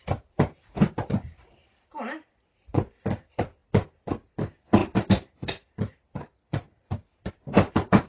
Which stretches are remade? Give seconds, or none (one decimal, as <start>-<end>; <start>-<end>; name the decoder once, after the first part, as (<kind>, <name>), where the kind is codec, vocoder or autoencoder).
0.0-3.6 (vocoder, BigVGAN v2); 4.3-8.1

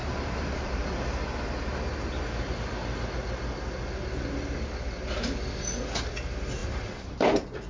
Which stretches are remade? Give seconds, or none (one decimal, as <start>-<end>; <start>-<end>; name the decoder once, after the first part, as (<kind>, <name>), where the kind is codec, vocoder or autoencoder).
0.0-0.7 (vocoder, BigVGAN v2); 6.6-7.7

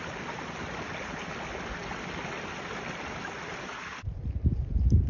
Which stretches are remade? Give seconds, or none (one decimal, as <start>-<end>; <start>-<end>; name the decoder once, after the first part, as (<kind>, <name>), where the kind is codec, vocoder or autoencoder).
none

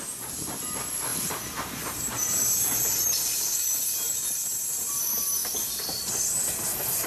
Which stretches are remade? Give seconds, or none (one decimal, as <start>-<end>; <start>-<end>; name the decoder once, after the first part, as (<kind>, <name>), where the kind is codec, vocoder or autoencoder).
1.1-4.9 (vocoder, BigVGAN v2)

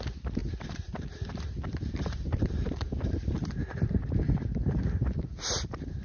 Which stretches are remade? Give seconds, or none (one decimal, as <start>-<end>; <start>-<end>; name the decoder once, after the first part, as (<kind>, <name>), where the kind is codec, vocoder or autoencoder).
0.4-4.0 (vocoder, BigVGAN v2)